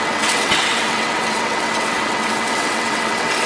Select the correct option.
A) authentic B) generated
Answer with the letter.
B